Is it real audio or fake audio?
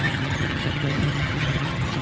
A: fake